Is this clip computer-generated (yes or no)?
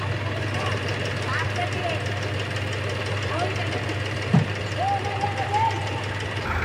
no